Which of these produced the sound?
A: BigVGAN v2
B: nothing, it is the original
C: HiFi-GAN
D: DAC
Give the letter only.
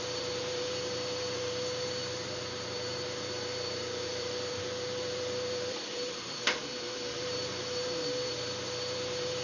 A